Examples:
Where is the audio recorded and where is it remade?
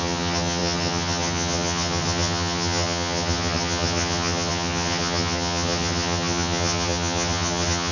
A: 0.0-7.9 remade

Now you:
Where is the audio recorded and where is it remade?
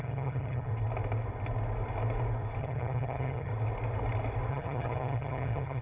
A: 0.0-0.7 remade; 0.7-2.6 recorded; 2.6-3.5 remade; 3.5-4.5 recorded; 4.5-5.8 remade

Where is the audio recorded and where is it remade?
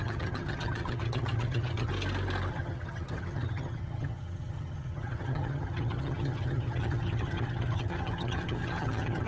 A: 0.0-1.9 remade; 1.9-2.5 recorded; 2.5-9.3 remade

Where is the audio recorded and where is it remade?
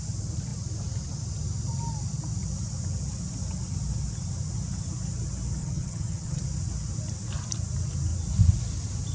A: 0.0-5.6 recorded; 5.6-6.4 remade; 6.4-9.1 recorded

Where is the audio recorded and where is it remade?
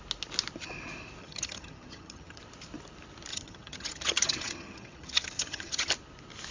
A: 0.0-1.2 recorded; 1.2-2.4 remade; 2.4-3.3 recorded; 3.3-5.9 remade; 5.9-6.5 recorded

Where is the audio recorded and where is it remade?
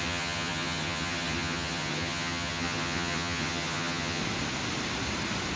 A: 0.0-4.2 remade; 4.2-5.6 recorded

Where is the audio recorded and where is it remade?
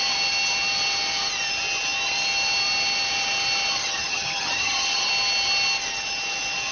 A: 0.0-3.8 recorded; 3.8-5.1 remade; 5.1-6.7 recorded